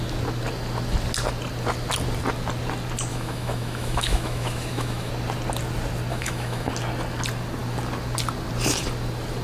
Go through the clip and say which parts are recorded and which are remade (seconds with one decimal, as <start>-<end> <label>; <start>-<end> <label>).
0.0-3.1 recorded; 3.1-5.1 remade; 5.1-6.1 recorded; 6.1-6.7 remade; 6.7-9.4 recorded